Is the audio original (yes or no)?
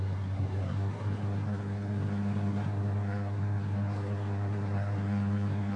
no